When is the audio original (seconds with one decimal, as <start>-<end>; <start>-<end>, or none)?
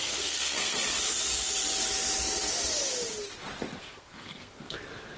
0.8-3.8; 4.8-5.2